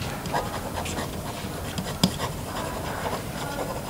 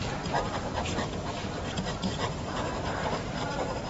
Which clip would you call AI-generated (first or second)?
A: second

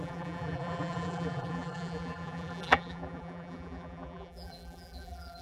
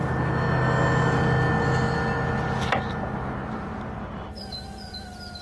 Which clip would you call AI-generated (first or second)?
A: first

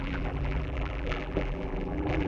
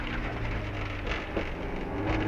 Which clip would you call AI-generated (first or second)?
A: first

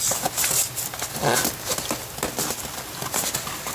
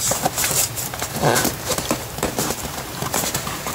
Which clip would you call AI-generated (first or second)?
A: second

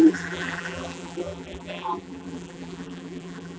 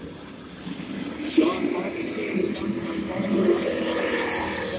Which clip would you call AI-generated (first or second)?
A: first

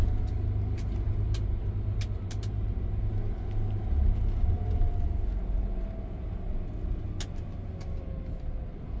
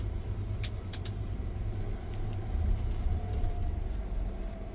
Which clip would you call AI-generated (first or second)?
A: second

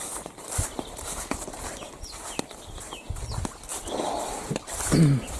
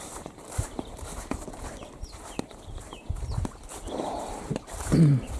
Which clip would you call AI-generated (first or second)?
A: second